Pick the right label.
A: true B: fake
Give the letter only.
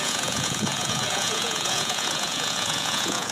B